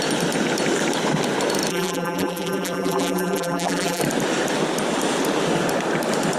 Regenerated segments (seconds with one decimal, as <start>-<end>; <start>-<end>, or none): 1.7-4.0